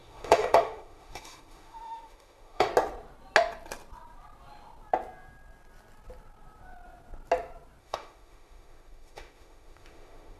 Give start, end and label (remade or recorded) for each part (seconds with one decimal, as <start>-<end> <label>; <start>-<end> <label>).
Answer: 0.0-2.7 remade; 2.7-7.8 recorded; 7.8-10.4 remade